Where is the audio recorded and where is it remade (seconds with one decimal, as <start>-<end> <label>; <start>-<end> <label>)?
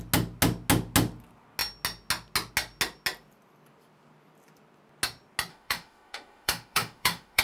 0.0-5.5 recorded; 5.5-7.4 remade